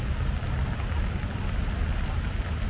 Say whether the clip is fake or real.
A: real